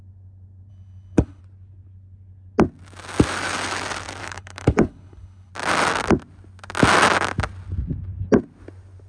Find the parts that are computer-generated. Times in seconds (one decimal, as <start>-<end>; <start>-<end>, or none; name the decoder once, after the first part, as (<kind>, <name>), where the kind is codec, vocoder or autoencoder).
0.7-1.4 (codec, HILCodec); 4.2-5.5